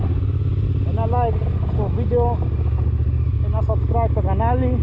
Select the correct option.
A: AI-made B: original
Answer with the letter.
B